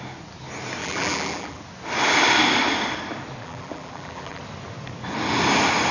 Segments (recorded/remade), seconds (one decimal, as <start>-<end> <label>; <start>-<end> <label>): 0.0-0.8 recorded; 0.8-1.6 remade; 1.6-3.4 recorded; 3.4-4.4 remade; 4.4-5.9 recorded